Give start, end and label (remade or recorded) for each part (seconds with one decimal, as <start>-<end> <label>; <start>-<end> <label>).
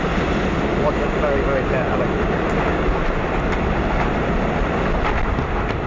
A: 0.0-2.7 recorded; 2.7-3.7 remade; 3.7-5.9 recorded